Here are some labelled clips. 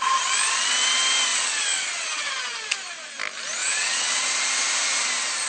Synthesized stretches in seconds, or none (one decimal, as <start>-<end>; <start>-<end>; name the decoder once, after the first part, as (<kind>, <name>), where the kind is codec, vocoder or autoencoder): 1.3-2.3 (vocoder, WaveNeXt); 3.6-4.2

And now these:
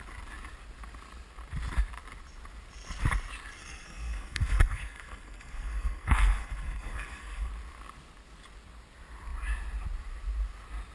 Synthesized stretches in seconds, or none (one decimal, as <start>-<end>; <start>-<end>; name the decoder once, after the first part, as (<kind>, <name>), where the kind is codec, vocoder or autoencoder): 3.6-7.5 (codec, SNAC)

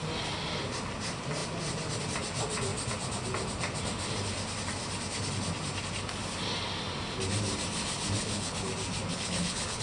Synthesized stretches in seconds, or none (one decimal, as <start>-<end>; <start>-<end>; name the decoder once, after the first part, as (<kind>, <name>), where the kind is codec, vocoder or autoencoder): 8.2-8.7 (codec, HILCodec); 9.1-9.8